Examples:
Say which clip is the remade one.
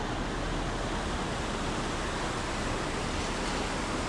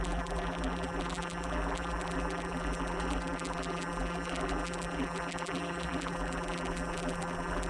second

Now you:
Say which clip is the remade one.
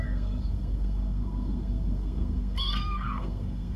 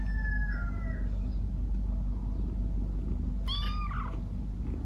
first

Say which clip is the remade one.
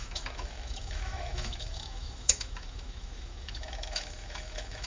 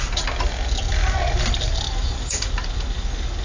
first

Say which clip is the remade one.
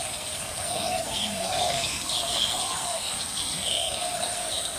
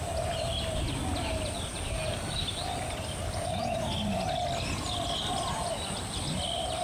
first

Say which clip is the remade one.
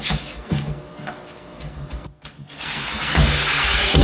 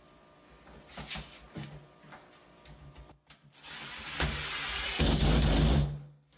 first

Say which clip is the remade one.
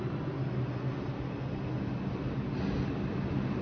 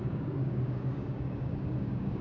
second